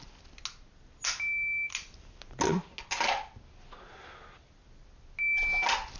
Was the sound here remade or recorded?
recorded